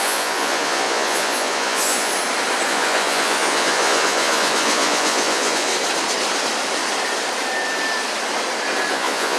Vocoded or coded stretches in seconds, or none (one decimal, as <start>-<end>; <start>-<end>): 0.0-2.1; 2.7-5.7; 8.9-9.4